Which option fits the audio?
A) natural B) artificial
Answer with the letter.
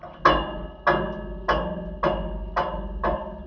A